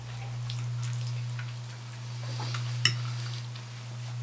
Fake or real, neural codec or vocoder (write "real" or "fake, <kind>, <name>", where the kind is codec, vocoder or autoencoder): real